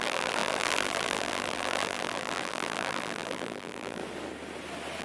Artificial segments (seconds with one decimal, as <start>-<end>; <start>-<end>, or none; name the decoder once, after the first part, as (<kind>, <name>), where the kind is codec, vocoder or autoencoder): 0.0-4.0 (vocoder, BigVGAN v2)